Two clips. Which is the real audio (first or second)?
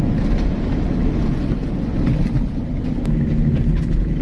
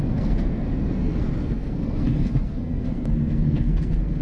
first